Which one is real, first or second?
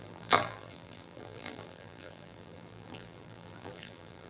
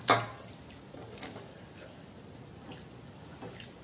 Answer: second